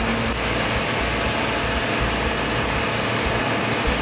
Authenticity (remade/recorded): recorded